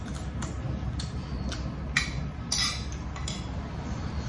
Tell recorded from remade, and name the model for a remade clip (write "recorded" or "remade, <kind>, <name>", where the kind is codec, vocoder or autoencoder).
recorded